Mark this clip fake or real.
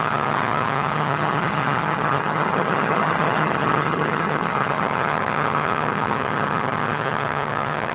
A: fake